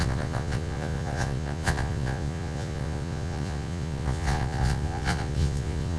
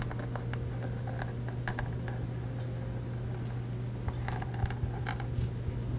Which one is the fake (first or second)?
first